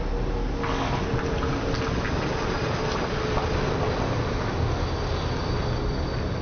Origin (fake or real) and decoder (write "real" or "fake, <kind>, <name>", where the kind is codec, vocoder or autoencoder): real